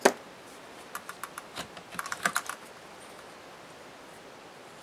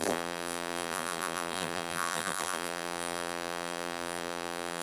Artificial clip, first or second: second